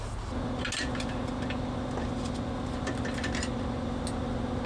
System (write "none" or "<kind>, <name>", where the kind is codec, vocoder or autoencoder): none